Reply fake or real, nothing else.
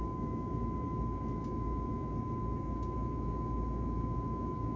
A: fake